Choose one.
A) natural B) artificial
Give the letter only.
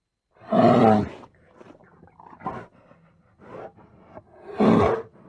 A